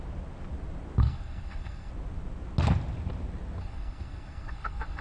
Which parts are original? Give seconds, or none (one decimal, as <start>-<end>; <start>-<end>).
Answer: 0.0-1.0; 1.9-3.6